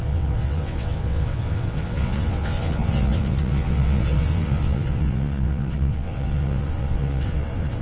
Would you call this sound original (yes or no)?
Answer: no